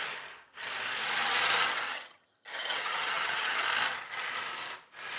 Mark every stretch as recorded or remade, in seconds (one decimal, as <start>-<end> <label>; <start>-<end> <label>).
0.0-1.9 recorded; 1.9-3.6 remade; 3.6-5.2 recorded